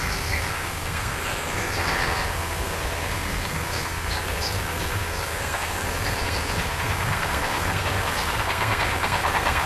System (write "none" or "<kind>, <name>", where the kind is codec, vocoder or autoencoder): codec, SNAC